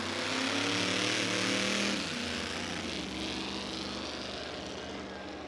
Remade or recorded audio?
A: recorded